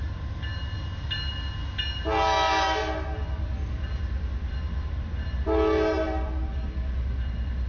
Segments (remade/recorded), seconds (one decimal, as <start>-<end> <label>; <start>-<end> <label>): 0.0-7.7 recorded